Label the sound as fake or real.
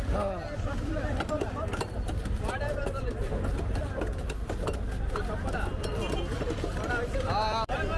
real